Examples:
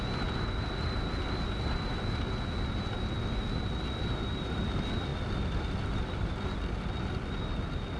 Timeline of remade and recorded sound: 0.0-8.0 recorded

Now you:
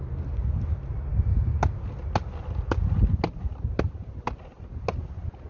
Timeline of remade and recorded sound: 0.0-5.5 recorded

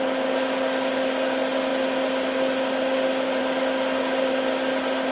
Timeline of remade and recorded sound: 0.0-5.1 recorded

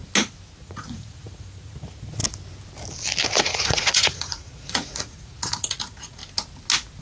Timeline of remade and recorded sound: 0.0-0.6 recorded; 0.6-2.2 remade; 2.2-3.4 recorded; 3.4-6.2 remade; 6.2-7.0 recorded